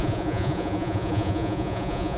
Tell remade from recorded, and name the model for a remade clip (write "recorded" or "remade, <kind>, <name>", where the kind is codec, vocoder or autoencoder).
remade, vocoder, Vocos